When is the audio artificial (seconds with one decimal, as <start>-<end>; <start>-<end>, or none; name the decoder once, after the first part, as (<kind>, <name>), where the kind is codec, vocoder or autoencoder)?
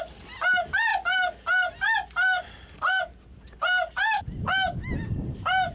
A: none